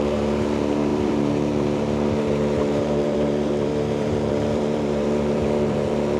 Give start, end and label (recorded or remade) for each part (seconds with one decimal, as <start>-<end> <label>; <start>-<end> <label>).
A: 0.0-6.2 remade